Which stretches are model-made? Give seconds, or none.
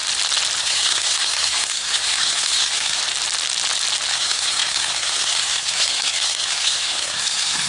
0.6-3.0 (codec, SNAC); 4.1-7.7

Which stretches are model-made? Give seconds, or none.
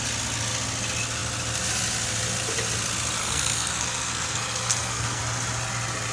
3.2-5.2 (codec, SNAC)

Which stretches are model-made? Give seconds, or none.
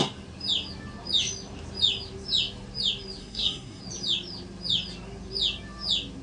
3.2-3.8 (codec, SNAC)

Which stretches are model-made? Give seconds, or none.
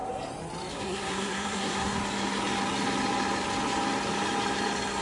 0.7-2.0 (codec, SNAC)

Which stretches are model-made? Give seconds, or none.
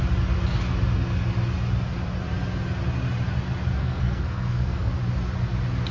3.8-4.9 (codec, SNAC)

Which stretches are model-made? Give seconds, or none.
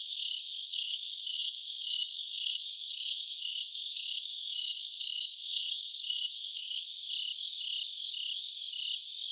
0.0-6.9 (codec, SNAC)